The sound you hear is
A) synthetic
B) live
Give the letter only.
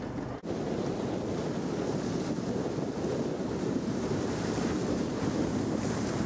B